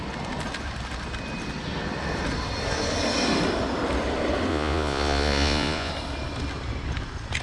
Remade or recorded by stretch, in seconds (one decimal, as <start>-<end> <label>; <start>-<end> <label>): 0.0-4.5 recorded; 4.5-5.9 remade; 5.9-7.4 recorded